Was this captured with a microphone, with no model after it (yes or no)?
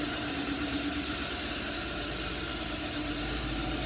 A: no